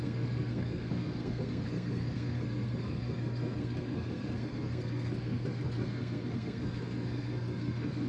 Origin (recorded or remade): remade